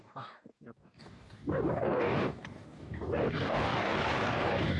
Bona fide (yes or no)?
no